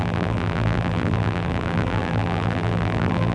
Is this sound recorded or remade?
remade